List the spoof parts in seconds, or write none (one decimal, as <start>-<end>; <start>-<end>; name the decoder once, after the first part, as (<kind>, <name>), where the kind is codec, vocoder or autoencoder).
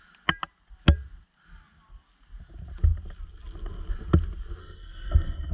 4.6-5.5 (codec, SNAC)